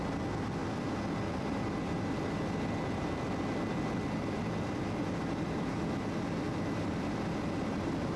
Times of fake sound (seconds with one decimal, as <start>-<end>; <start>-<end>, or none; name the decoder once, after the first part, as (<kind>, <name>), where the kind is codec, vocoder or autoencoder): none